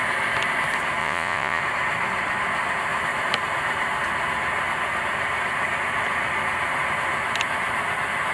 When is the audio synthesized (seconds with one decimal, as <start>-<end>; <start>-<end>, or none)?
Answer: 1.0-1.6